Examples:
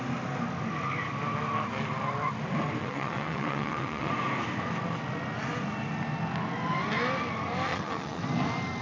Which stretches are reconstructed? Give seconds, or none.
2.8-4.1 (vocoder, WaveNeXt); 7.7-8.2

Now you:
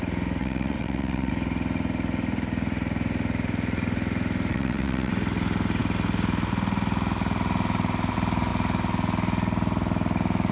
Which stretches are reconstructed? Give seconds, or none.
0.4-1.3 (vocoder, WaveNeXt); 4.5-5.1

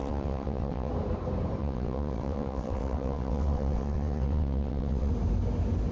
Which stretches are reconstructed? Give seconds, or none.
0.0-0.9 (vocoder, WaveNeXt); 1.6-5.1